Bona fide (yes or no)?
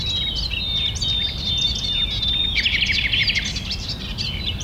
yes